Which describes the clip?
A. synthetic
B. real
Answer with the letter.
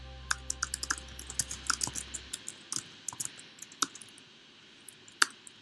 B